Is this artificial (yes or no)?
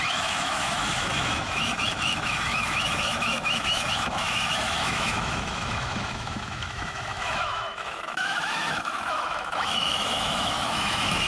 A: yes